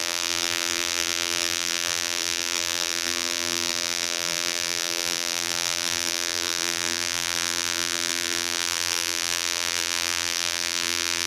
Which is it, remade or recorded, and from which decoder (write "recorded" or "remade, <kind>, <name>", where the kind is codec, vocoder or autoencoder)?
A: remade, vocoder, BigVGAN v2